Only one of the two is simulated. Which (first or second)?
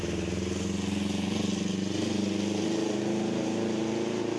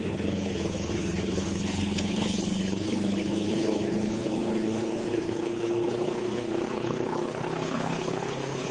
second